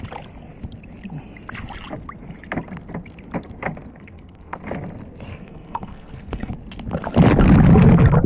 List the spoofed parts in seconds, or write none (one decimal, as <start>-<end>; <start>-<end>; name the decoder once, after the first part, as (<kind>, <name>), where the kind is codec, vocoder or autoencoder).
3.9-4.6 (codec, SNAC); 5.3-6.5